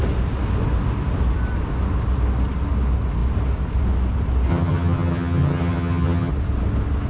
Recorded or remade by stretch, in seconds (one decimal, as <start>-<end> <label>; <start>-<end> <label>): 0.0-4.5 recorded; 4.5-6.3 remade; 6.3-7.1 recorded